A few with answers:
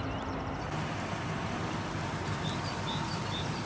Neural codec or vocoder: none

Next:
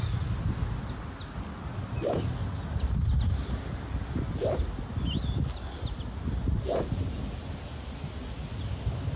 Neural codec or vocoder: none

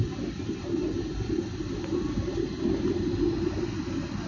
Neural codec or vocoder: none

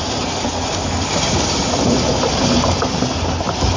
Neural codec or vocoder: none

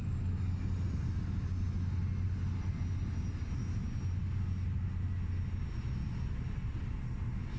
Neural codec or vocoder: none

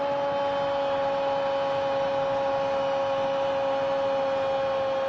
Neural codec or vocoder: none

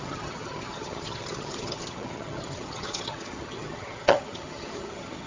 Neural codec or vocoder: vocoder, HiFi-GAN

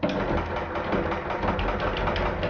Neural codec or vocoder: none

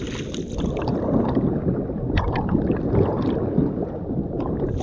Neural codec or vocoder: none